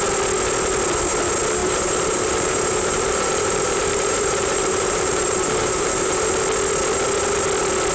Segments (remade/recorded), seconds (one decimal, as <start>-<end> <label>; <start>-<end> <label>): 0.0-1.6 recorded; 1.6-6.3 remade; 6.3-7.9 recorded